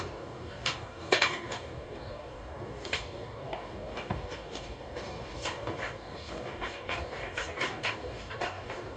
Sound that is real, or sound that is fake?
fake